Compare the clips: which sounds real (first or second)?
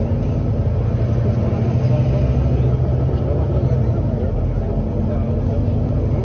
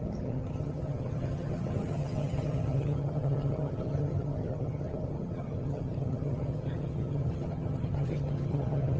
first